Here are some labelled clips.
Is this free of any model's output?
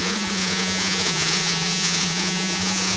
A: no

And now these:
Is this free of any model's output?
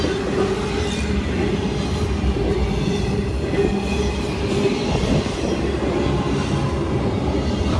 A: yes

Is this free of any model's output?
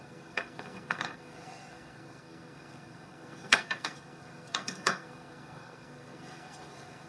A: no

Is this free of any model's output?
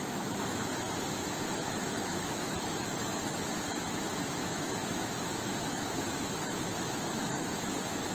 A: no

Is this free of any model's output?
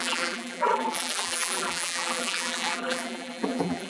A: no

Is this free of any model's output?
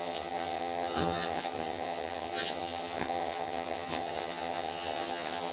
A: no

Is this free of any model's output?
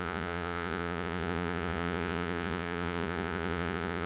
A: no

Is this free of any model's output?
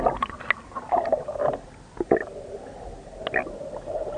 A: yes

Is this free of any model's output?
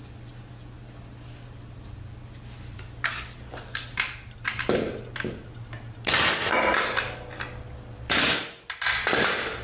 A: yes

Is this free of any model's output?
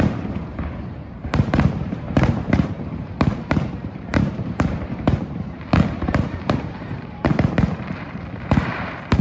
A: no